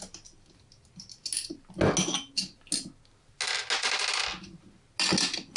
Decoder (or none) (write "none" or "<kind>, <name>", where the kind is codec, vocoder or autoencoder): none